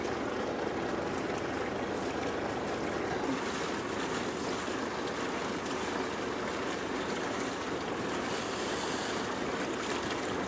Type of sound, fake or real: real